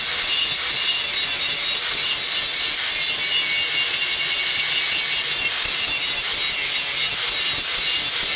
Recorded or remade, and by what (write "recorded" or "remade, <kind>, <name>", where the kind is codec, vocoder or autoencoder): recorded